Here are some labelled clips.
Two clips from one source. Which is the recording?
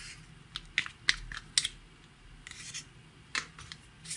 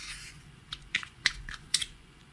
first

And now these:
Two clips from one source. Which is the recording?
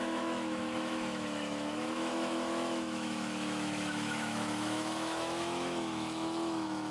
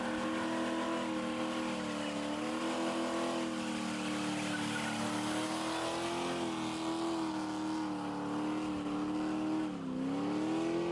second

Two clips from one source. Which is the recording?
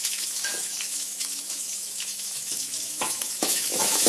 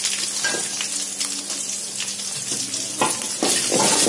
second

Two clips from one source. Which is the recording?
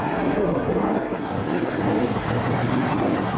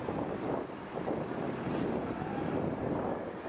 second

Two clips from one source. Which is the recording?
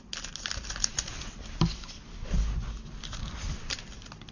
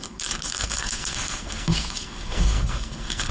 first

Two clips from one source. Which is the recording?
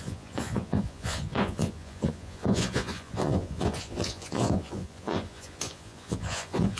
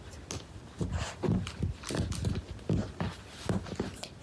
second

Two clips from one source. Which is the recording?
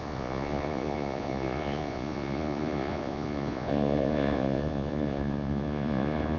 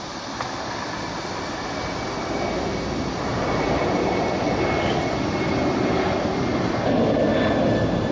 second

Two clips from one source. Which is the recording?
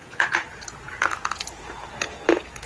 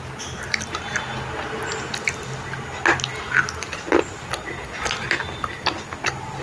second